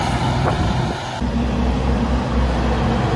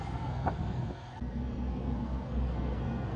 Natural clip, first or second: first